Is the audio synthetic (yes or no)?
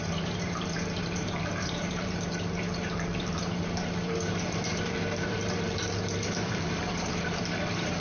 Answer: yes